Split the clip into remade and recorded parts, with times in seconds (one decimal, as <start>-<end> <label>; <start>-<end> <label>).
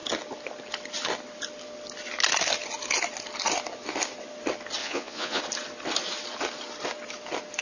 0.0-4.8 recorded; 4.8-5.4 remade; 5.4-7.6 recorded